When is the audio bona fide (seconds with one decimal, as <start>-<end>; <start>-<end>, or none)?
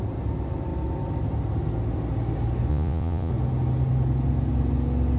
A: 0.0-2.7; 3.3-5.2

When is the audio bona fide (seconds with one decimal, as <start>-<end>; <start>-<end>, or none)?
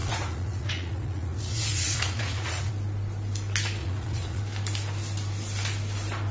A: 2.7-3.8; 4.4-6.3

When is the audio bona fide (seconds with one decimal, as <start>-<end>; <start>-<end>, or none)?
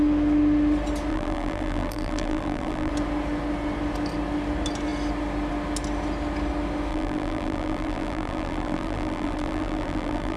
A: 0.0-1.1; 2.9-6.9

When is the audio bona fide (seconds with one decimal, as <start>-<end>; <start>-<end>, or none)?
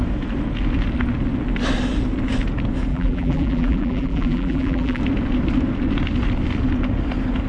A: 0.0-2.9; 5.0-7.5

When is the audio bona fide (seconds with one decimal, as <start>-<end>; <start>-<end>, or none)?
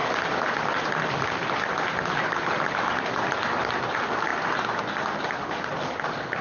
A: 0.0-6.4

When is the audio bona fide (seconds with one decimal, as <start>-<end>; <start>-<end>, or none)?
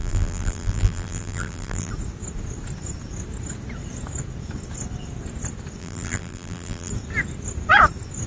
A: 1.9-5.8; 6.9-8.3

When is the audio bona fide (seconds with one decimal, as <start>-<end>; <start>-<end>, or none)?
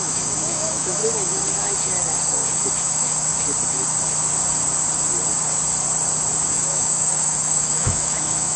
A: 1.0-2.8; 3.3-6.5